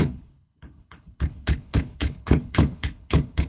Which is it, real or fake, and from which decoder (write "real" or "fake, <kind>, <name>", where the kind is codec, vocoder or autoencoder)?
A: fake, codec, HILCodec